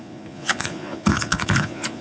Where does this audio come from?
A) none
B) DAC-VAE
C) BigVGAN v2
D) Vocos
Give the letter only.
D